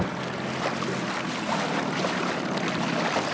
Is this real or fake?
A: real